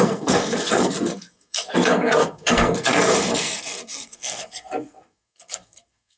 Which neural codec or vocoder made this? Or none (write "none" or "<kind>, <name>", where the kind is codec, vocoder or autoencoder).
codec, SNAC